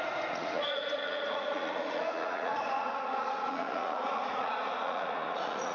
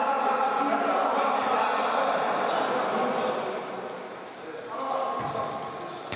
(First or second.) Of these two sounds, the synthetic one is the first